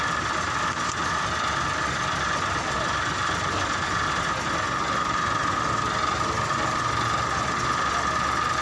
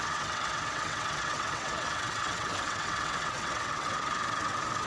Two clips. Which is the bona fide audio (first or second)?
first